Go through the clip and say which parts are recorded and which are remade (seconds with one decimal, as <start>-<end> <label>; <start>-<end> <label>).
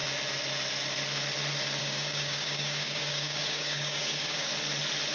0.0-1.8 recorded; 1.8-4.5 remade; 4.5-5.1 recorded